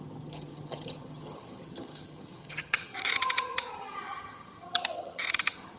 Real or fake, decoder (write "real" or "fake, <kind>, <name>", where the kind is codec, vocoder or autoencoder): fake, vocoder, HiFi-GAN